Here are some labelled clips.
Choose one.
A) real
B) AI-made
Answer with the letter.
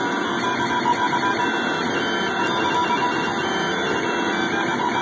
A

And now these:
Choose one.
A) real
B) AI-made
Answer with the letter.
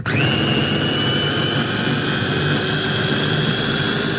A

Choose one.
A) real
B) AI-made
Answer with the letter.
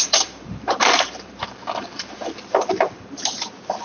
B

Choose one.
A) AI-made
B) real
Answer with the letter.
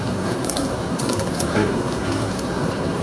A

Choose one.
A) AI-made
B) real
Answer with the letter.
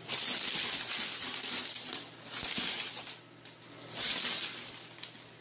B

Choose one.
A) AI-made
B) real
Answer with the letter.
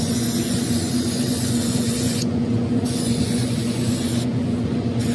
A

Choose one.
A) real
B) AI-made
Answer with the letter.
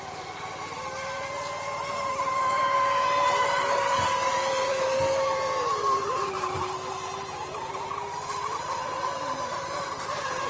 A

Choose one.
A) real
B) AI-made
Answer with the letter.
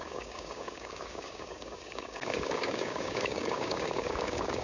B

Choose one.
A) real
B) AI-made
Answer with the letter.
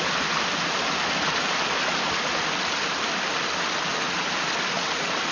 A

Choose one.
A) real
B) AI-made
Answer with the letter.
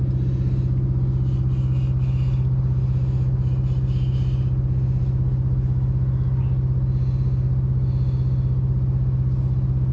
A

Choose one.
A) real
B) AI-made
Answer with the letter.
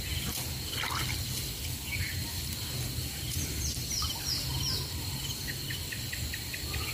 A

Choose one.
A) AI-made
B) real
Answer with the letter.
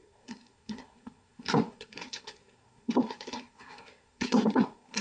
A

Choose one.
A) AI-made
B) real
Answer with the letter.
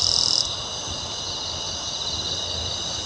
B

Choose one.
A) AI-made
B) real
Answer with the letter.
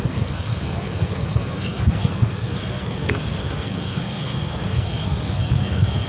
A